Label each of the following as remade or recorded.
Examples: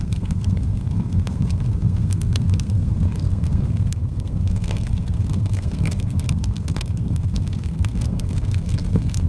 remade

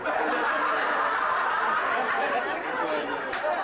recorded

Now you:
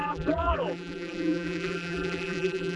remade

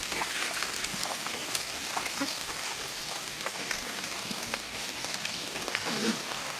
remade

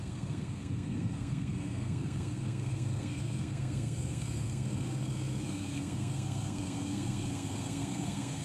remade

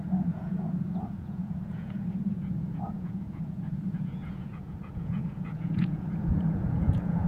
remade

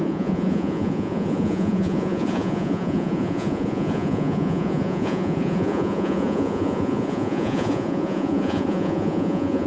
remade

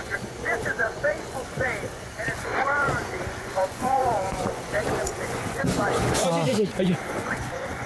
remade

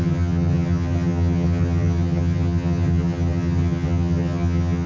remade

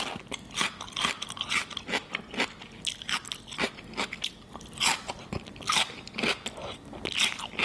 recorded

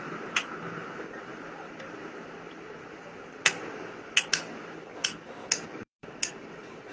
recorded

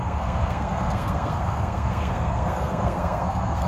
remade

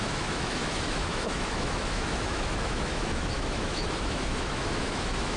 remade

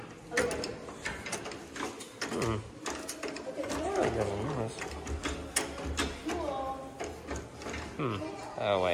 recorded